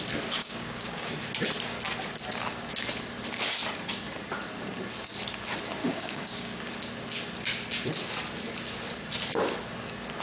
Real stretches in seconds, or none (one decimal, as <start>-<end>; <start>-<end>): 0.0-0.4; 1.1-5.8; 6.6-10.2